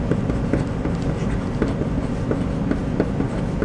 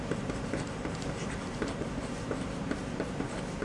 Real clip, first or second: first